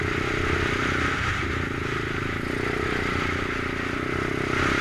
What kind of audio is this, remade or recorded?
recorded